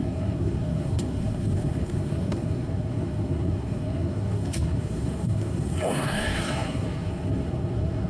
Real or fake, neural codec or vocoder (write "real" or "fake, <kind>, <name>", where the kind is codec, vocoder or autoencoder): fake, codec, SNAC